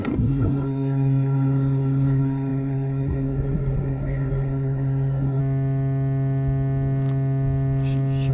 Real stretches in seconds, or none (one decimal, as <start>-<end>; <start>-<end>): 5.4-8.3